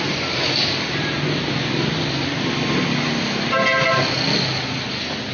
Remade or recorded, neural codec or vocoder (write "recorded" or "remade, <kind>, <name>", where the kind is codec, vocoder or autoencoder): recorded